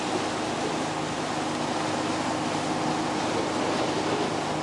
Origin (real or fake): real